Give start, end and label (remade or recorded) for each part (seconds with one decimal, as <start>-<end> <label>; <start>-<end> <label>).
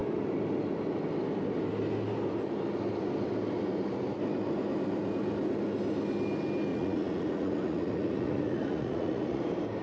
0.0-6.7 recorded; 6.7-9.4 remade; 9.4-9.8 recorded